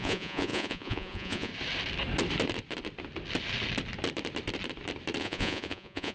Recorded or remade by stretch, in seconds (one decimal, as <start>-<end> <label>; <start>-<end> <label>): 0.0-1.5 remade; 1.5-5.2 recorded; 5.2-6.1 remade